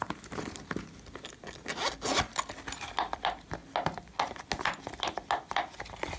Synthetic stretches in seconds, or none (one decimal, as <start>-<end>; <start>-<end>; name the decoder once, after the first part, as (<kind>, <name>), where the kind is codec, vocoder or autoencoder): none